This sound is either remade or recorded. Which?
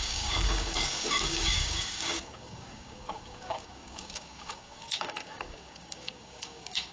remade